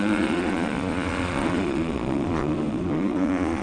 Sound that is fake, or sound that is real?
fake